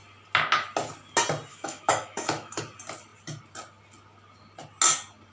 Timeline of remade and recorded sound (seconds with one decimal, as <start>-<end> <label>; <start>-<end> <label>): 0.0-1.5 recorded; 1.5-2.6 remade; 2.6-5.3 recorded